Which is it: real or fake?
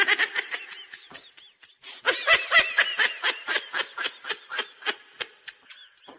real